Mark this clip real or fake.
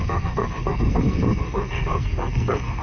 fake